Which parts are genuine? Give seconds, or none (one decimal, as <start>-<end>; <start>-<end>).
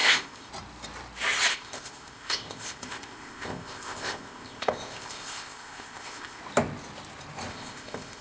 0.5-1.5; 6.4-7.5